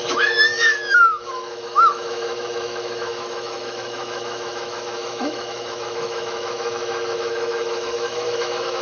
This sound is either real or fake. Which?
fake